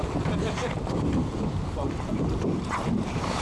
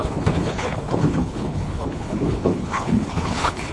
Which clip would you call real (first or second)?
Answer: first